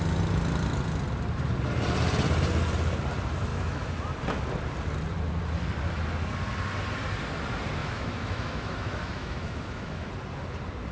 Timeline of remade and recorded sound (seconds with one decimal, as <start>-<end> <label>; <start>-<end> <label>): 0.0-3.5 recorded; 3.5-4.0 remade; 4.0-7.8 recorded; 7.8-10.1 remade; 10.1-10.9 recorded